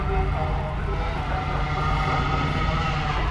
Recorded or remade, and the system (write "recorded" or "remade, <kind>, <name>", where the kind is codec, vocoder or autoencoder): recorded